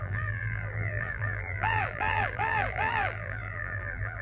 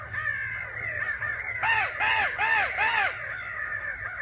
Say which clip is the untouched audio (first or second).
second